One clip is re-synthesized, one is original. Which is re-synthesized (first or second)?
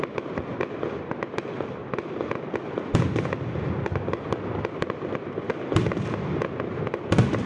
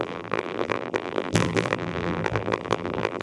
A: second